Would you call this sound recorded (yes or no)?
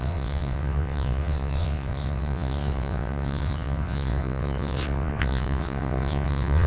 no